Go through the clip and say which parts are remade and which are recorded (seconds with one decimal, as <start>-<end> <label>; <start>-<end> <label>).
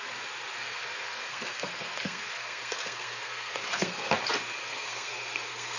0.0-0.6 recorded; 0.6-4.1 remade; 4.1-4.6 recorded; 4.6-5.8 remade